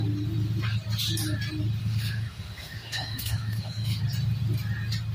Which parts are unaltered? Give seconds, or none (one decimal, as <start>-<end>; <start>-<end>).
0.0-1.8; 4.0-5.1